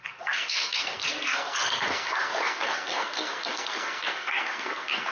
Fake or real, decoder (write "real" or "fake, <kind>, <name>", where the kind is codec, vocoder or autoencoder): fake, codec, SNAC